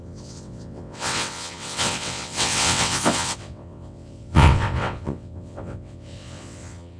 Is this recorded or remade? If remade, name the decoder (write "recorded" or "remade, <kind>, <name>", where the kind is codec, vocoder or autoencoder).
remade, vocoder, WaveNeXt